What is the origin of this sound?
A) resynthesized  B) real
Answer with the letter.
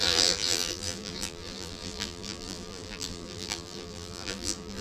A